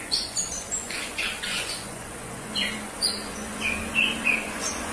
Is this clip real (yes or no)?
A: no